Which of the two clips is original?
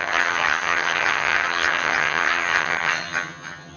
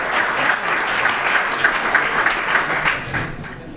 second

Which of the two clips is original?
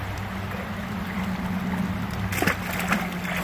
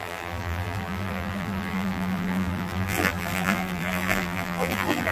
first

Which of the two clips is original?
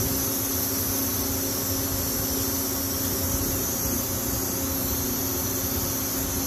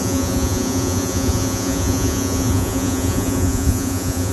first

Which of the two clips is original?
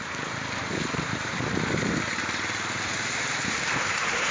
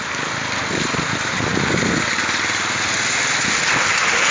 second